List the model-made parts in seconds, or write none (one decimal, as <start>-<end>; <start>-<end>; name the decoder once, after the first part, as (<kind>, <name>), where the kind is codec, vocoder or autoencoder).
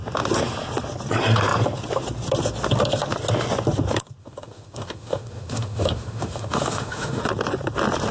4.2-7.2 (autoencoder, DAC-VAE)